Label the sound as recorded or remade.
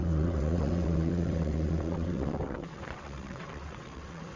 remade